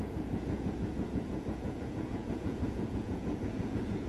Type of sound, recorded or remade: remade